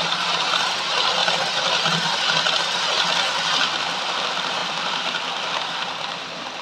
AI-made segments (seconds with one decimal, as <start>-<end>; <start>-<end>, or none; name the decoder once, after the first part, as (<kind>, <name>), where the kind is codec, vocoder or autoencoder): 4.6-6.6 (vocoder, BigVGAN v2)